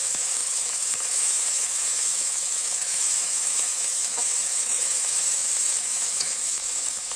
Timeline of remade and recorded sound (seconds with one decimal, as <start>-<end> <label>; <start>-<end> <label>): 0.0-7.2 remade